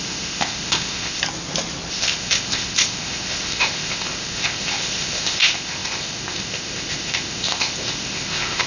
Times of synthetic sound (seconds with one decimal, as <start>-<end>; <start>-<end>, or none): 0.0-1.2; 1.9-8.7